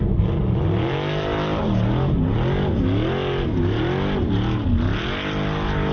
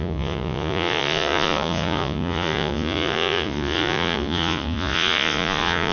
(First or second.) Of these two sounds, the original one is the first